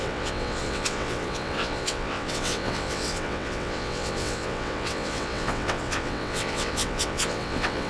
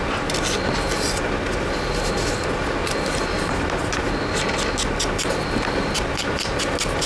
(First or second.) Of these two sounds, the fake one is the first